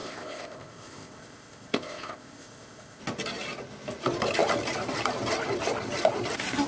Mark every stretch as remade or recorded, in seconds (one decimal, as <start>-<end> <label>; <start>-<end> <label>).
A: 0.0-3.0 remade; 3.0-6.7 recorded